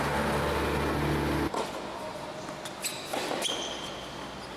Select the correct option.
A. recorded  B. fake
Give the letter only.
A